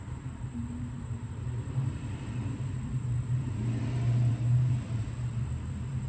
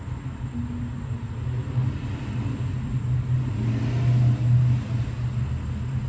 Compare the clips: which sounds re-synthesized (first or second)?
first